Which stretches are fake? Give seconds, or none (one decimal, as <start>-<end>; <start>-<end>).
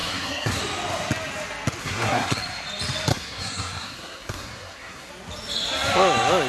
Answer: 0.0-0.6; 1.8-2.4; 3.1-5.1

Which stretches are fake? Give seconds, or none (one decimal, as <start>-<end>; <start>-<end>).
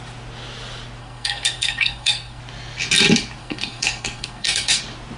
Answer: 1.0-2.4; 3.4-4.8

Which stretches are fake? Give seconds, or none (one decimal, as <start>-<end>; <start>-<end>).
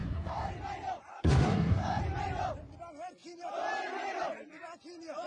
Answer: 0.0-0.5; 1.1-2.0